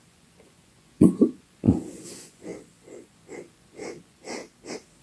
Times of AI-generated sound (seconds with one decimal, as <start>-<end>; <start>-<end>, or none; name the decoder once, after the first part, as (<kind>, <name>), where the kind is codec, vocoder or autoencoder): 0.0-4.4 (vocoder, Vocos)